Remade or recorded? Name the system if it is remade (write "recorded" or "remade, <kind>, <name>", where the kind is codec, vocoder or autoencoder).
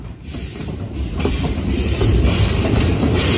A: remade, vocoder, BigVGAN v2